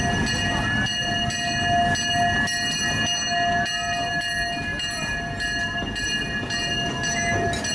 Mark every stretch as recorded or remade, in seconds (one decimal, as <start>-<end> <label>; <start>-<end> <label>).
0.0-7.7 recorded